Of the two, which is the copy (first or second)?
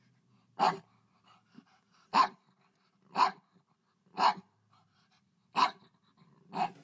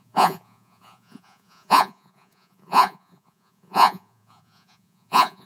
second